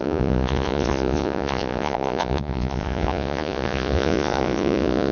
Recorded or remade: remade